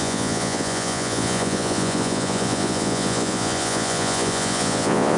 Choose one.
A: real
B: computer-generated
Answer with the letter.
B